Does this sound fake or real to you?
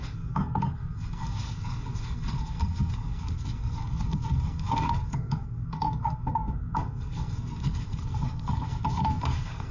fake